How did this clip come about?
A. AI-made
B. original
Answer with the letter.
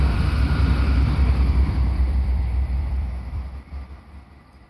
A